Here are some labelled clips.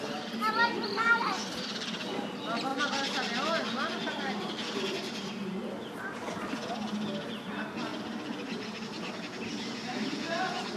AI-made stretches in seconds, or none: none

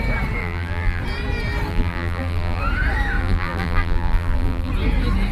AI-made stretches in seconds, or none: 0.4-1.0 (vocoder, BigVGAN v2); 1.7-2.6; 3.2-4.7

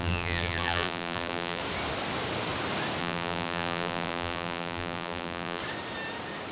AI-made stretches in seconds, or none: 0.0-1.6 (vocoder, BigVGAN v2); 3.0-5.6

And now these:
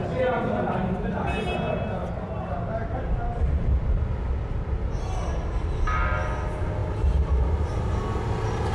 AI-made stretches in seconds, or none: 6.8-7.7 (vocoder, BigVGAN v2)